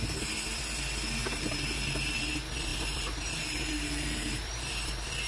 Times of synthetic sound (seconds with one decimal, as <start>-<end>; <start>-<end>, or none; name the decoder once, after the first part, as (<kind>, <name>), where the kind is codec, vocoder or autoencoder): 1.2-2.3 (vocoder, BigVGAN v2); 2.7-4.7